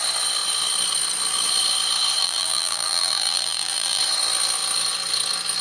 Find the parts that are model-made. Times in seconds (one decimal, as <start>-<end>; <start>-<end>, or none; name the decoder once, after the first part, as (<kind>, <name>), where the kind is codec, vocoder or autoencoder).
2.2-4.0 (vocoder, BigVGAN v2)